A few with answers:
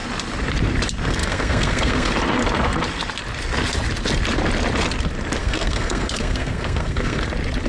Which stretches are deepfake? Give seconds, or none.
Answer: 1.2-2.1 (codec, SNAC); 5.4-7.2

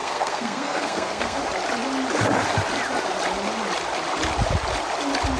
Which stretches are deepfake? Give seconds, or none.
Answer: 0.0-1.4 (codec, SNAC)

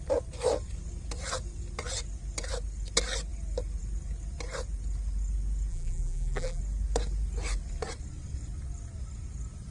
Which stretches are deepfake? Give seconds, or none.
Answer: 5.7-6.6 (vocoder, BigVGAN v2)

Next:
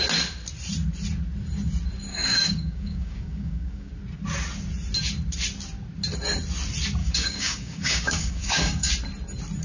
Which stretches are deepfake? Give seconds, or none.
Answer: 2.1-3.9 (codec, DAC); 7.0-8.9

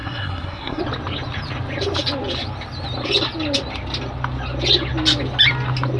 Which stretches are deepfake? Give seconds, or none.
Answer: 0.0-0.8 (codec, SNAC)